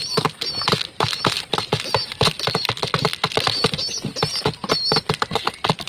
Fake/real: real